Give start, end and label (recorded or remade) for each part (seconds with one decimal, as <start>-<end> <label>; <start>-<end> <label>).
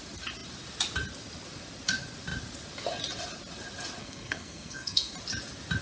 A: 0.0-4.0 recorded; 4.0-5.1 remade; 5.1-5.8 recorded